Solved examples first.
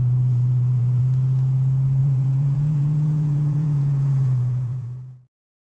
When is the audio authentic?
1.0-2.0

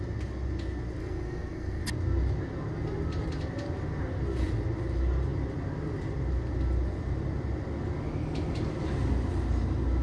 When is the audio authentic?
0.0-1.0; 1.8-10.0

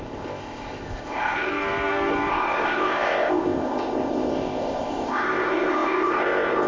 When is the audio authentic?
1.5-2.3